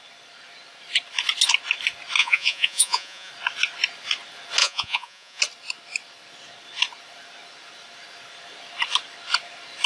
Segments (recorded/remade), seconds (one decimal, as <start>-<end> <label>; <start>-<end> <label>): 0.0-2.2 recorded; 2.2-3.3 remade; 3.3-4.6 recorded; 4.6-5.4 remade; 5.4-9.9 recorded

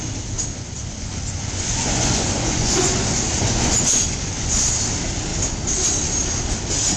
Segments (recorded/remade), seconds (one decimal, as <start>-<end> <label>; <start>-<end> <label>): 0.0-0.5 recorded; 0.5-4.7 remade; 4.7-7.0 recorded

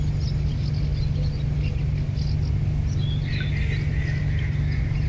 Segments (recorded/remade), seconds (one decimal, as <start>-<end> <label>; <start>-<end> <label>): 0.0-5.1 recorded

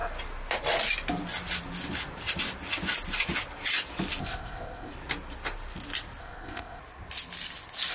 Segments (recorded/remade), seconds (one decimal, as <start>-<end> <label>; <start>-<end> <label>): 0.0-4.2 recorded; 4.2-4.9 remade; 4.9-6.2 recorded; 6.2-6.8 remade; 6.8-7.9 recorded

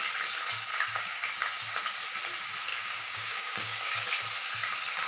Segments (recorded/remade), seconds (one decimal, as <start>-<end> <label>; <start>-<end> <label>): 0.0-0.7 recorded; 0.7-1.3 remade; 1.3-2.7 recorded; 2.7-4.1 remade; 4.1-5.1 recorded

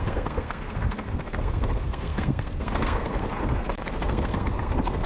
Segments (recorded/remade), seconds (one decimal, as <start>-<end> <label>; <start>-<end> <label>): 0.0-5.1 remade

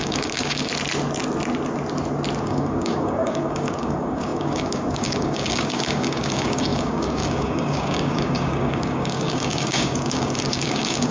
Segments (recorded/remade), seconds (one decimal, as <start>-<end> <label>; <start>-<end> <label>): 0.0-0.7 remade; 0.7-2.4 recorded; 2.4-11.1 remade

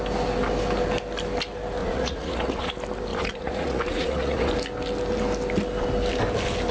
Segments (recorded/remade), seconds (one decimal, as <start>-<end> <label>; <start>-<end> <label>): 0.0-1.8 recorded; 1.8-2.7 remade; 2.7-3.1 recorded; 3.1-4.5 remade; 4.5-6.7 recorded